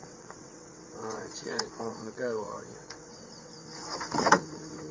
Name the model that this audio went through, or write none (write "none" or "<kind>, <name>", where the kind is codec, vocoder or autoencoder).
vocoder, WaveNeXt